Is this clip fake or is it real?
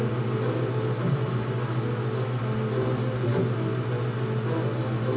real